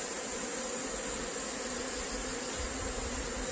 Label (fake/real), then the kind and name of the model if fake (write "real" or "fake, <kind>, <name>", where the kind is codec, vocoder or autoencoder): real